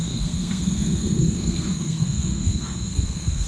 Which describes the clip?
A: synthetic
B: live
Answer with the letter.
A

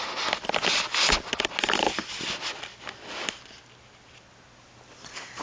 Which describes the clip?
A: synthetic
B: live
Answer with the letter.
B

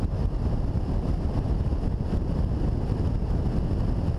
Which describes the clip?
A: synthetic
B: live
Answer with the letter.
B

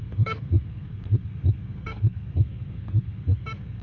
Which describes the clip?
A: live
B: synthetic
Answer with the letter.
B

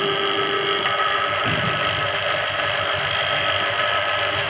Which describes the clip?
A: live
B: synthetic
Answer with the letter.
A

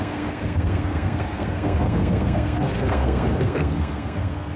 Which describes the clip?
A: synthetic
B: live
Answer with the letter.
A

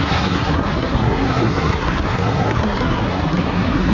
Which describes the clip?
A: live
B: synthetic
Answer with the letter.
B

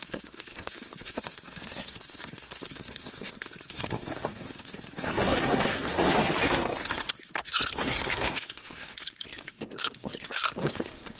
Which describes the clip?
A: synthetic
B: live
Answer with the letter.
A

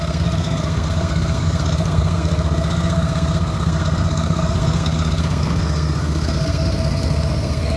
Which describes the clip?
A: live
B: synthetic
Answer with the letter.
B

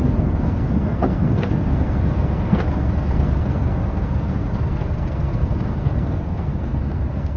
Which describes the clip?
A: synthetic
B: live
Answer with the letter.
A